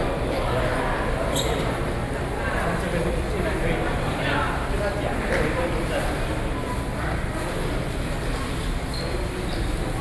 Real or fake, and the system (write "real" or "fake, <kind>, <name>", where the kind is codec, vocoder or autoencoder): real